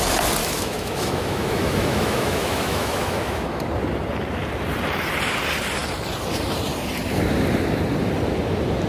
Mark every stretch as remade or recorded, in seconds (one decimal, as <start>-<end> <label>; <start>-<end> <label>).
0.0-0.4 recorded; 0.4-3.6 remade; 3.6-8.9 recorded